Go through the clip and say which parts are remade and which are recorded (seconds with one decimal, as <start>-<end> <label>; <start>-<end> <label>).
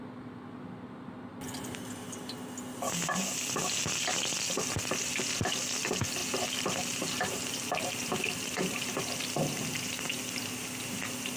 0.0-1.3 recorded; 1.3-1.8 remade; 1.8-6.2 recorded; 6.2-9.0 remade; 9.0-11.4 recorded